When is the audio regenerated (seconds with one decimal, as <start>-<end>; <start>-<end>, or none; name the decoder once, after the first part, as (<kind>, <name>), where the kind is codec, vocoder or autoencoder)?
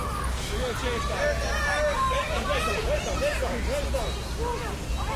none